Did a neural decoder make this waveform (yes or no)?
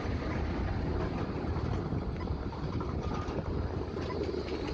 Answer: no